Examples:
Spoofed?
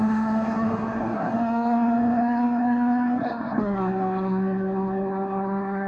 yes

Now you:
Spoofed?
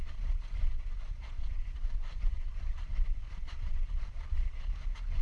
yes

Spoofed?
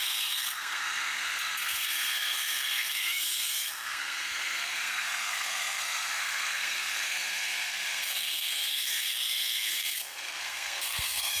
yes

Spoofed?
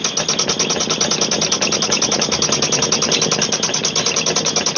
no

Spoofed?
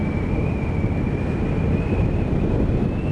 no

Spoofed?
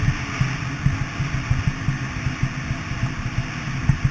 no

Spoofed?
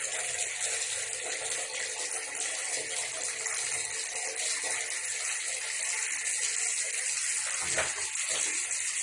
no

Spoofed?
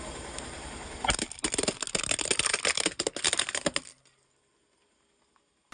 no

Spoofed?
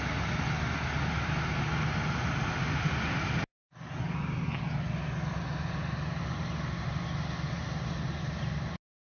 no